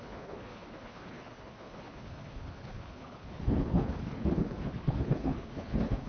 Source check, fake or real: fake